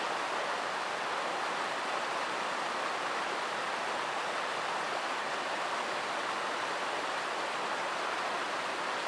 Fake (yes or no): no